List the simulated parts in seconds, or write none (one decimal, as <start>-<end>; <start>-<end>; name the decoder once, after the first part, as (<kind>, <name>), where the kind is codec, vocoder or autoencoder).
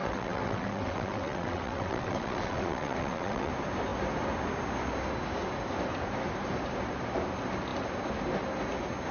0.0-3.5 (vocoder, WaveNeXt)